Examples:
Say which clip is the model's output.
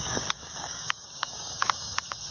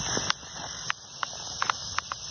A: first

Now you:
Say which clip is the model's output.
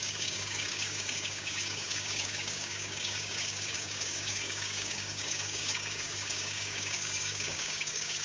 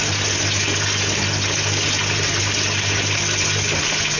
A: first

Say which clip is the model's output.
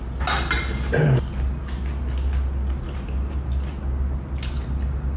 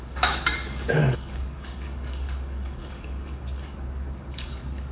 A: second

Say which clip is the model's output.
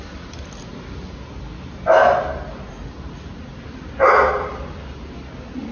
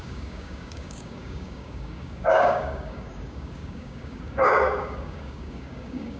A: second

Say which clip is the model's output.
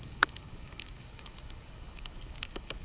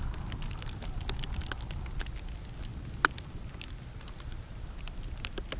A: first